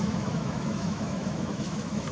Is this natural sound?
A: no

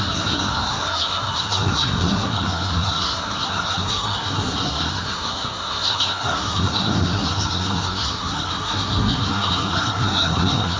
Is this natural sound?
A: no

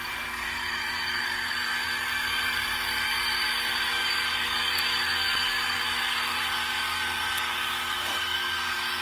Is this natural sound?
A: no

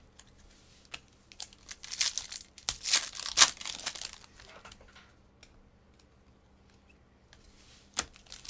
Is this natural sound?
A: yes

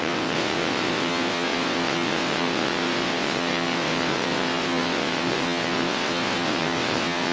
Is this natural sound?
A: no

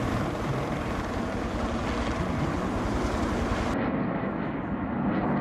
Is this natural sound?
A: yes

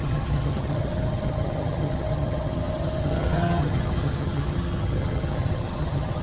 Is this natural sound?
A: no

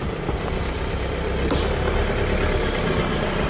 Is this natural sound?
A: yes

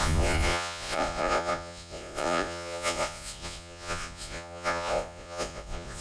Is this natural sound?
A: no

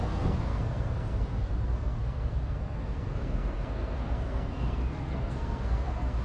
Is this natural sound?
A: no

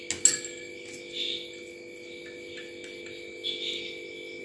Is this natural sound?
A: yes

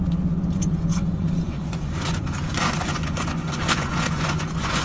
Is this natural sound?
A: no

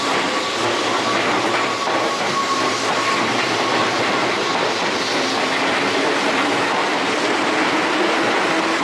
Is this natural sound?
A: yes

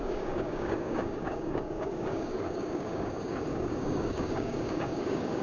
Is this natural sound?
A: no